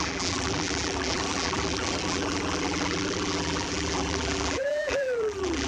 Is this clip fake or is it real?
fake